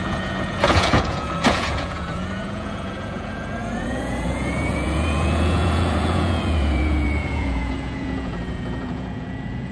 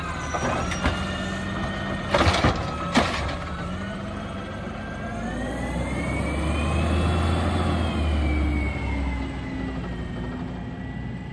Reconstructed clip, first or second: first